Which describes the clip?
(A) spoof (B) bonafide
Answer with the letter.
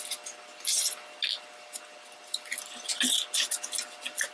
B